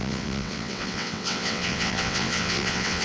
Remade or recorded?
remade